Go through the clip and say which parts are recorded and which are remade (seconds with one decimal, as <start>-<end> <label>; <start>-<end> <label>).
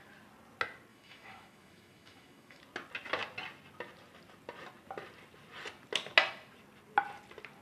0.0-0.9 recorded; 0.9-2.6 remade; 2.6-7.6 recorded